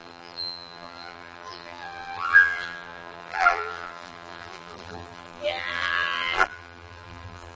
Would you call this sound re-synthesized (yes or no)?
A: yes